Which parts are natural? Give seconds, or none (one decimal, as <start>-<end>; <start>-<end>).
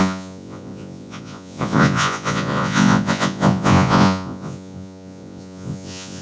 none